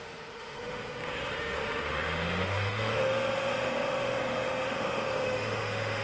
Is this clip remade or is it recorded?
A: remade